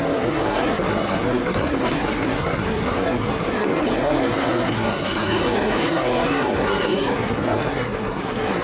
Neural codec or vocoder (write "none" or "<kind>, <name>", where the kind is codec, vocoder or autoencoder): codec, SNAC